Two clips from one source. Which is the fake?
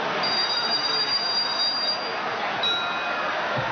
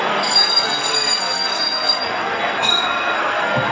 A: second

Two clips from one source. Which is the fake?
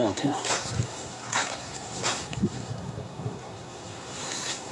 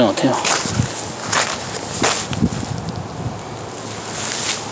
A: first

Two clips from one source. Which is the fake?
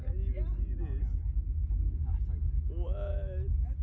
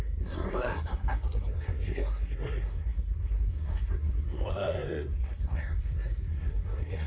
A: second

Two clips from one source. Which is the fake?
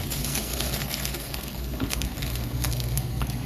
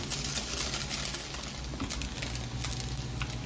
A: first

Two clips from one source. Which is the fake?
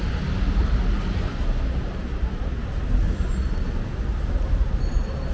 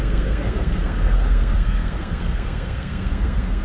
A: second